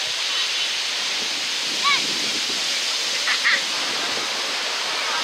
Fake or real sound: real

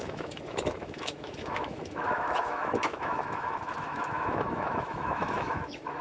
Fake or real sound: fake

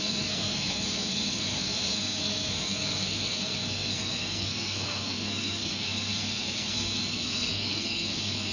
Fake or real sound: fake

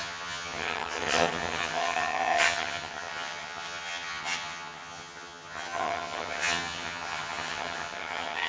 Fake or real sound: fake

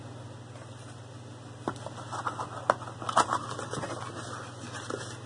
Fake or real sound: real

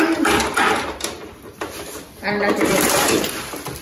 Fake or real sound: fake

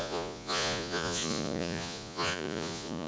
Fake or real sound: fake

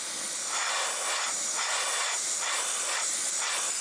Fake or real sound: real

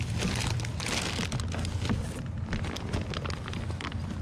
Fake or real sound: real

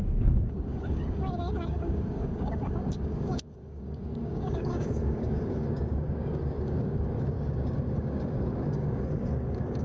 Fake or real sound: fake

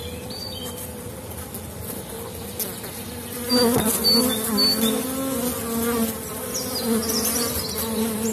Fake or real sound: real